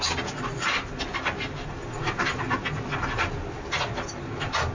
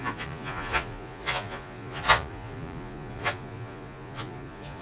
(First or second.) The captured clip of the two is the first